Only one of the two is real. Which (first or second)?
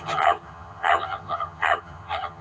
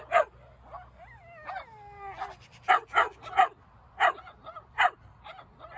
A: second